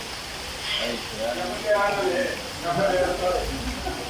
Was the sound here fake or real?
real